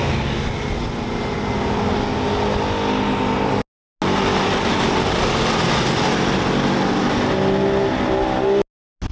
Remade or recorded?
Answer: recorded